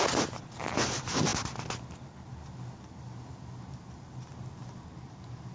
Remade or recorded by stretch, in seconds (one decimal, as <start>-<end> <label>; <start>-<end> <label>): 0.0-5.5 recorded